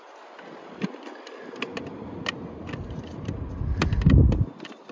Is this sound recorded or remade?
recorded